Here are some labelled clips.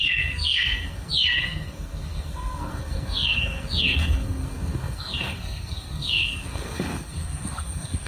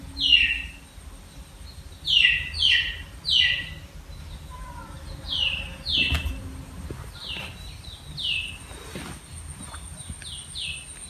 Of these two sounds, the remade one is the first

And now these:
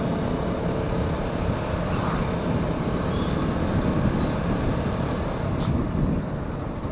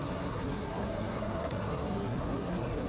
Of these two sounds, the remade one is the second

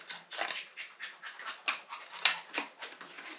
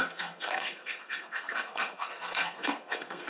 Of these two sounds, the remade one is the second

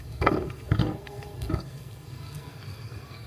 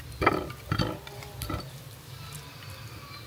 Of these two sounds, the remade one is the first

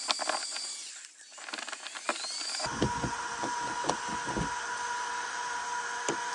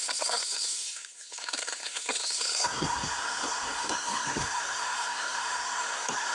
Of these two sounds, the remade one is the second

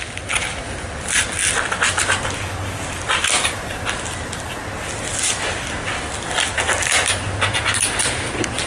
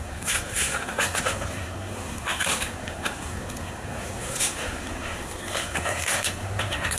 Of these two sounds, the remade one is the second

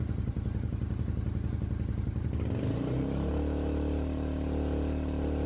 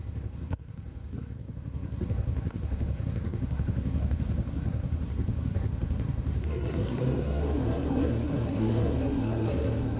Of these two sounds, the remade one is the second